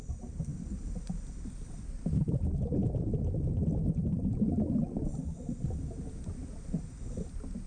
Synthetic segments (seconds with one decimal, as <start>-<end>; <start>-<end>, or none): none